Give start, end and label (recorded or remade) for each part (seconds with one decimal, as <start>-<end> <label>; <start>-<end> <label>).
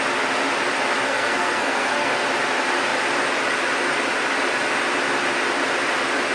0.0-1.0 recorded; 1.0-2.2 remade; 2.2-6.3 recorded